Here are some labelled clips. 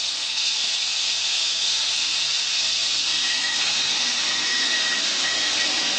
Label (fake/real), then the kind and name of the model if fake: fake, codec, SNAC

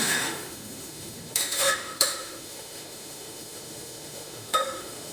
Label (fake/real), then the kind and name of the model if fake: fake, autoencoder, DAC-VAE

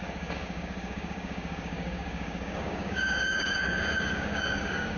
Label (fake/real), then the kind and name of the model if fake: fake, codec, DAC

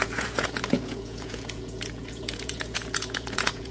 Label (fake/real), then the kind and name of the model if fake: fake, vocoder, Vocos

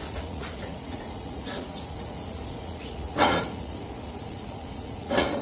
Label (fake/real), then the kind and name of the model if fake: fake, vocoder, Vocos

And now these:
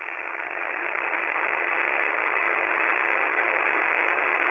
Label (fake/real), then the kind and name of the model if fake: fake, vocoder, HiFi-GAN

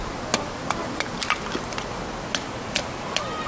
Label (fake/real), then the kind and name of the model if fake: real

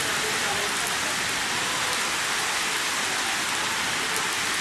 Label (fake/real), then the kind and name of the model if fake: real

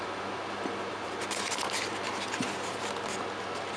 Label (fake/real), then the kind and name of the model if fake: real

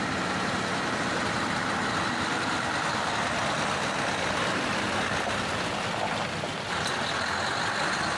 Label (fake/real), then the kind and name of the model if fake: real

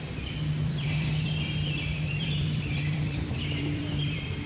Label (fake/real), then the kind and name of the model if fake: fake, vocoder, BigVGAN v2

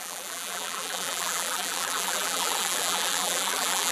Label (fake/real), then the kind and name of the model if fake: fake, vocoder, BigVGAN v2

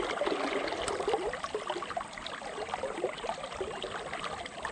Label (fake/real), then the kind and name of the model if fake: real